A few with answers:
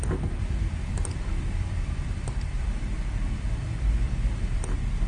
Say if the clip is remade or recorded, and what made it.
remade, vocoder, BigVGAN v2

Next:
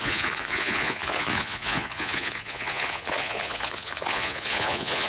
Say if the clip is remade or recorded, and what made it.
remade, vocoder, Vocos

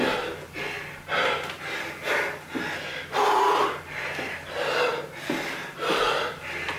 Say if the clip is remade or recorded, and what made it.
recorded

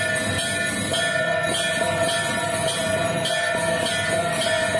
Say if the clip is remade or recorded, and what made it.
recorded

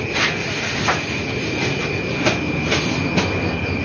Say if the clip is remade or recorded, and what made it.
recorded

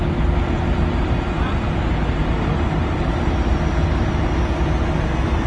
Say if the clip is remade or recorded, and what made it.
recorded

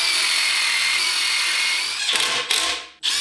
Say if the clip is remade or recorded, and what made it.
recorded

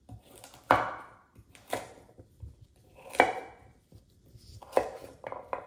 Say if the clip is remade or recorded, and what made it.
remade, vocoder, BigVGAN v2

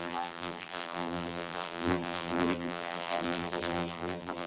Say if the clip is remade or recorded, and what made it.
remade, vocoder, BigVGAN v2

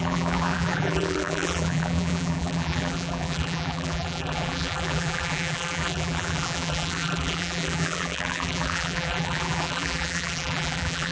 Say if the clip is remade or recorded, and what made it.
remade, vocoder, BigVGAN v2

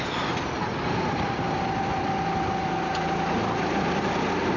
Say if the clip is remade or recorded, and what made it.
recorded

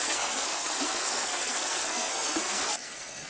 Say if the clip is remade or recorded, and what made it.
remade, codec, SNAC